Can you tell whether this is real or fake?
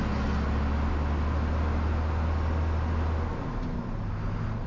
real